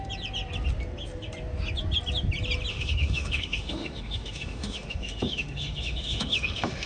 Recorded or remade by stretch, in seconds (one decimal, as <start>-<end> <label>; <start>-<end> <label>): 0.0-2.7 recorded; 2.7-6.9 remade